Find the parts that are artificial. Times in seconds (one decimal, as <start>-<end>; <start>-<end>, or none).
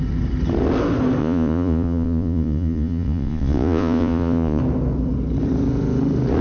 1.2-4.6